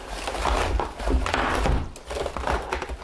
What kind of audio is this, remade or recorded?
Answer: recorded